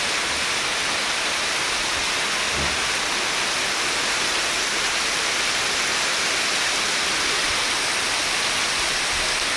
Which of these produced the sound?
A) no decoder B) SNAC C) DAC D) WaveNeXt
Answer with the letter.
A